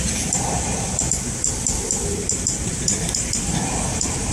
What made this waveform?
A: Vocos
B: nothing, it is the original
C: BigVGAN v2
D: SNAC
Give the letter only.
B